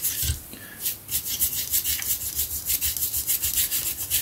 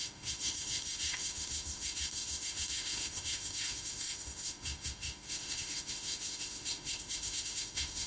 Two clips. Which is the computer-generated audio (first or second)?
second